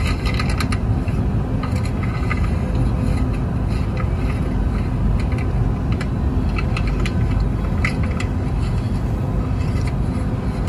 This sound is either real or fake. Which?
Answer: real